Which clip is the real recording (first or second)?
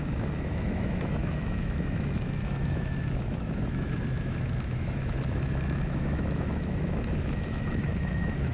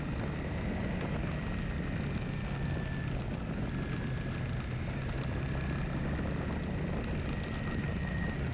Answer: second